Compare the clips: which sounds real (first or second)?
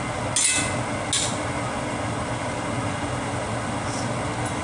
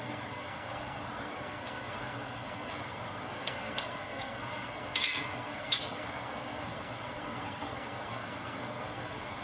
first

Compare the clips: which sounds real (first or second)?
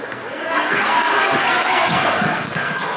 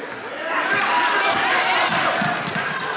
second